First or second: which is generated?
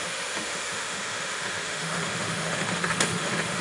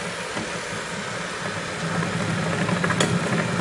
first